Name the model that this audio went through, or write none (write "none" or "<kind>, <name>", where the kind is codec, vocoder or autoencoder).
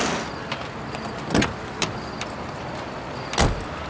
none